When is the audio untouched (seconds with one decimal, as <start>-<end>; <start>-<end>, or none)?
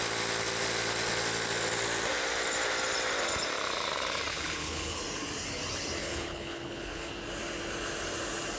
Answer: 0.0-4.3; 5.0-6.0; 7.1-8.6